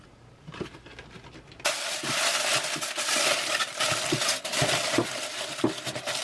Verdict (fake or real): real